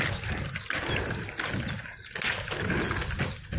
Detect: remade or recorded recorded